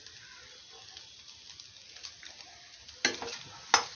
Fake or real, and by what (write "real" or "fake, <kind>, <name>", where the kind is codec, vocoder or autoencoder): real